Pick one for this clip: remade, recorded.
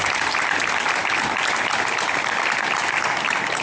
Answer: recorded